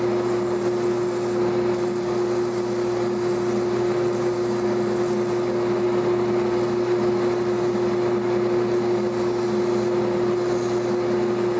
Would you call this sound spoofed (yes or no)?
no